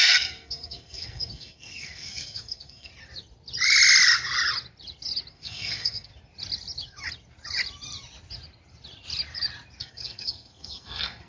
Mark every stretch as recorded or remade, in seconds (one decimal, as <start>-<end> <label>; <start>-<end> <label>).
0.0-2.9 remade; 2.9-5.3 recorded; 5.3-6.1 remade; 6.1-9.8 recorded; 9.8-11.3 remade